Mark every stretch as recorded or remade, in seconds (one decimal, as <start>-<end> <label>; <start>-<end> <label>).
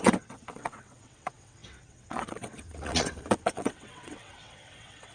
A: 0.0-5.1 remade